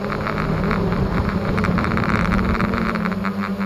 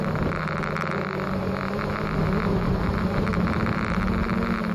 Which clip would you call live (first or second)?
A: second